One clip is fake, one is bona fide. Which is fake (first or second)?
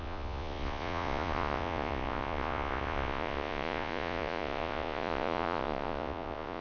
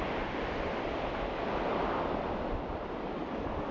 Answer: first